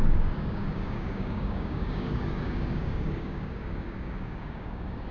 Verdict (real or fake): fake